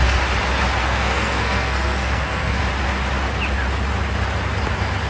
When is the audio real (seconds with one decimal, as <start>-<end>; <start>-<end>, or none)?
0.0-0.8; 2.6-5.1